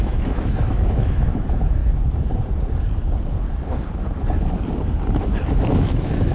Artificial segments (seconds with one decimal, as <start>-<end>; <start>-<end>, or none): 0.0-1.8; 5.6-6.3